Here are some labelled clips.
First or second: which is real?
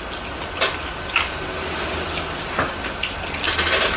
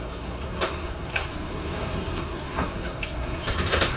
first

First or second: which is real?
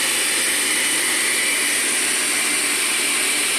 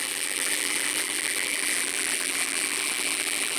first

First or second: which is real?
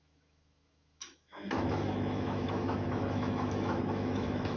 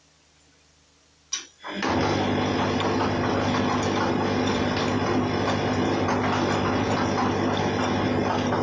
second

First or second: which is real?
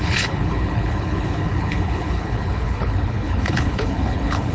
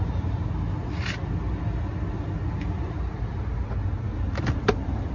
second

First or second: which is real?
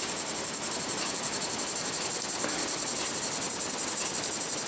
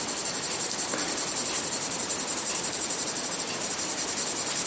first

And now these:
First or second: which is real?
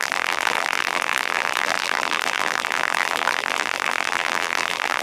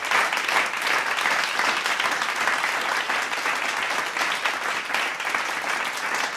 second